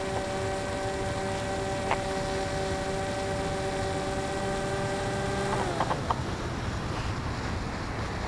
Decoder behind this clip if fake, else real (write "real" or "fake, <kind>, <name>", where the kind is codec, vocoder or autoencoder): real